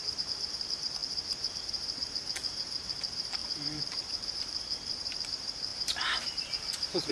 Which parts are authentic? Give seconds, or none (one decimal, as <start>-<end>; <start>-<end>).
none